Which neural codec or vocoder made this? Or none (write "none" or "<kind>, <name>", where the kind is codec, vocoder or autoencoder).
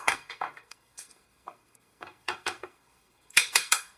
codec, SNAC